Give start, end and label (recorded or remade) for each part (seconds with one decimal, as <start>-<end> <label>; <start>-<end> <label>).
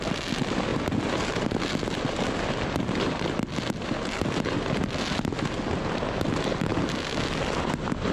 0.0-8.1 recorded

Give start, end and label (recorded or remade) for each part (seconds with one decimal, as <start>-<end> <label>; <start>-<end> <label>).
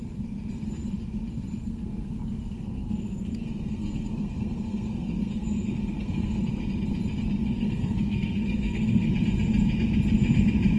0.0-1.6 recorded; 1.6-6.4 remade; 6.4-7.4 recorded; 7.4-9.1 remade; 9.1-10.8 recorded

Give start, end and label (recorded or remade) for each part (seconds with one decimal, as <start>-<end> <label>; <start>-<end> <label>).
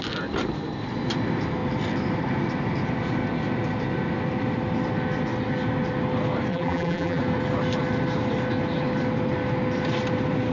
0.0-6.5 recorded; 6.5-7.2 remade; 7.2-10.5 recorded